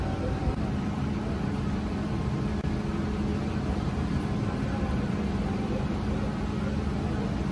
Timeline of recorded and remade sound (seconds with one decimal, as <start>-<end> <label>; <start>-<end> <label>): 0.0-0.4 recorded; 0.4-1.4 remade; 1.4-3.3 recorded; 3.3-6.1 remade; 6.1-7.5 recorded